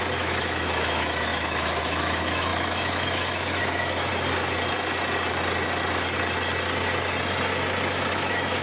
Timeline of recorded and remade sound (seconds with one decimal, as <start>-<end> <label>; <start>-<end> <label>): 0.0-4.1 remade; 4.1-8.1 recorded; 8.1-8.6 remade